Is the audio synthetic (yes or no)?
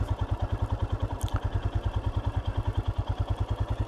no